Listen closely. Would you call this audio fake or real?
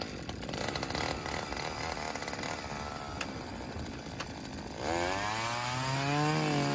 real